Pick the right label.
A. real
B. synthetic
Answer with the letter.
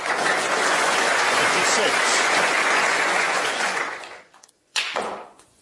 B